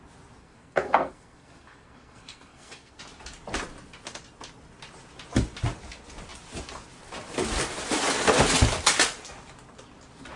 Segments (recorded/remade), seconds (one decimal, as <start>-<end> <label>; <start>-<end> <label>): 0.0-0.4 recorded; 0.4-3.0 remade; 3.0-10.4 recorded